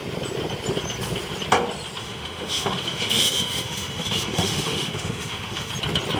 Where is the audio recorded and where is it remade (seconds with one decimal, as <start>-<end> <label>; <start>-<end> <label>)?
0.0-2.0 recorded; 2.0-5.7 remade; 5.7-6.2 recorded